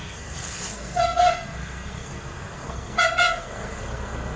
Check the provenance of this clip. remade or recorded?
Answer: remade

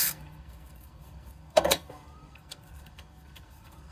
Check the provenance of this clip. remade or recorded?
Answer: remade